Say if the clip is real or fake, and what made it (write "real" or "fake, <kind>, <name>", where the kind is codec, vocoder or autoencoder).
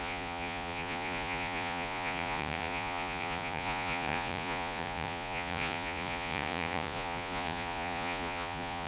fake, vocoder, Vocos